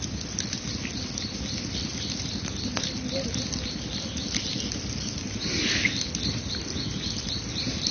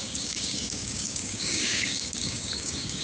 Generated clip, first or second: second